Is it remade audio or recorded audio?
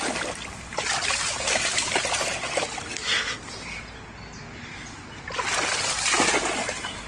recorded